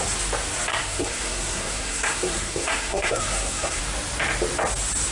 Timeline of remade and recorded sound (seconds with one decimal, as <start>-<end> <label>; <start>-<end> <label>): 0.0-0.7 recorded; 0.7-3.8 remade; 3.8-5.1 recorded